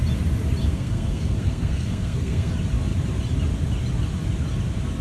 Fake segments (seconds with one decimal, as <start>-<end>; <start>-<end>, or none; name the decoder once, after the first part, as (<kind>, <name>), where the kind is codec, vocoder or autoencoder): 0.6-2.5 (codec, SNAC)